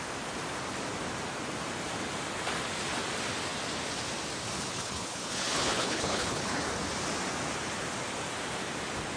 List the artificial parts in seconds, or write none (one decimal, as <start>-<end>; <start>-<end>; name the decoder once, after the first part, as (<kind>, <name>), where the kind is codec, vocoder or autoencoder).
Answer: 4.7-6.6 (codec, HILCodec)